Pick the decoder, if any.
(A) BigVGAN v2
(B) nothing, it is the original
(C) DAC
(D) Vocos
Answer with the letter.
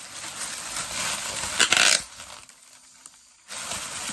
B